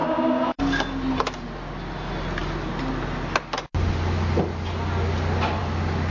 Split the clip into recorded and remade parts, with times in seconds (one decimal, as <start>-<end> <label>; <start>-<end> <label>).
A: 0.0-0.6 remade; 0.6-6.1 recorded